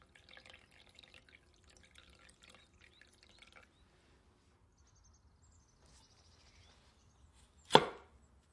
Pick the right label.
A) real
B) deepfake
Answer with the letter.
A